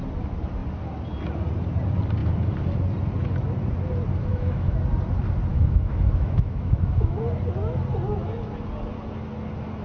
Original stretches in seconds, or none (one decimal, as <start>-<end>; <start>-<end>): 0.0-4.3; 4.8-5.5; 7.2-9.8